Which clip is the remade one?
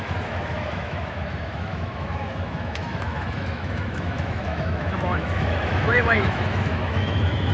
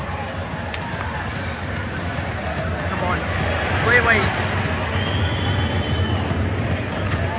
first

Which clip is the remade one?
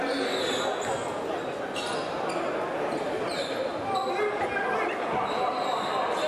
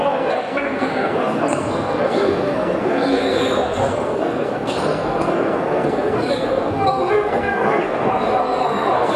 second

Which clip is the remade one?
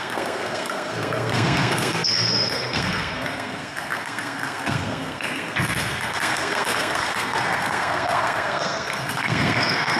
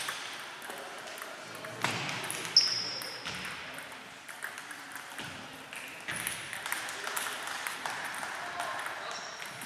first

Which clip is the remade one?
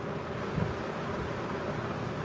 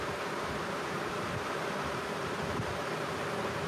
second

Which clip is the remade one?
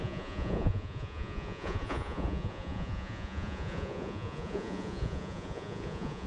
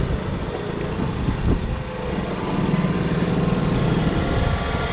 first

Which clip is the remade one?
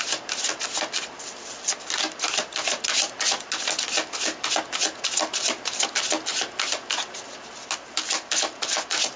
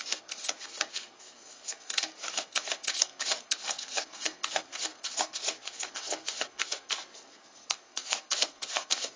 second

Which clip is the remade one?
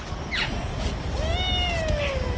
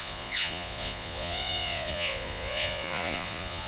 second